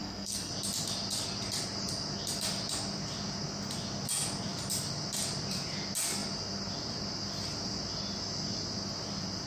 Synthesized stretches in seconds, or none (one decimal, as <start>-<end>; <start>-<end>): 0.0-0.5